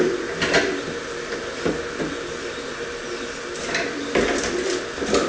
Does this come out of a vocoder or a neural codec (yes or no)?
no